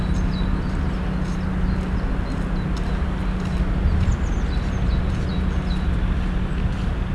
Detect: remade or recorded recorded